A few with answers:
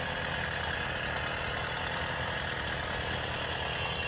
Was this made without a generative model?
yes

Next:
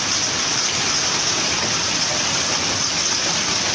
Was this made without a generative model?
yes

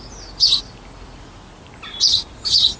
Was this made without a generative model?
yes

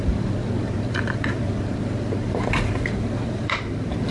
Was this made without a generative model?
yes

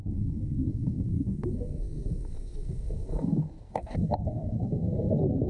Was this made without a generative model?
no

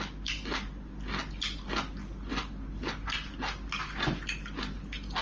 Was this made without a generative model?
yes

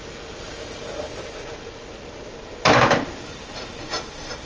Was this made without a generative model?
yes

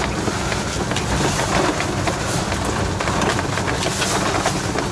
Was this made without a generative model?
yes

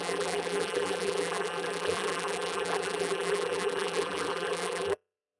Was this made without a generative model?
no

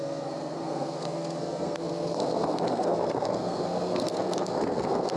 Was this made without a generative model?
no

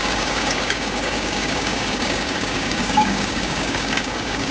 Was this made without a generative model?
no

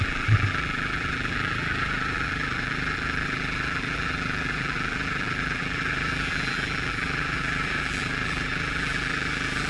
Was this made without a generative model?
no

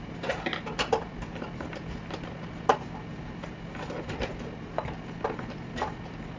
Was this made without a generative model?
yes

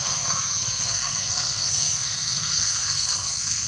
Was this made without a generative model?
no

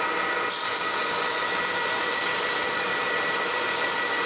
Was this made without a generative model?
yes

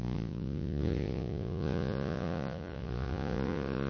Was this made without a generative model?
no